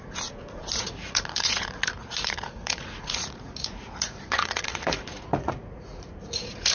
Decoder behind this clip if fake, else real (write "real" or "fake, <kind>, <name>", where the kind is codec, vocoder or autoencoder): fake, vocoder, Vocos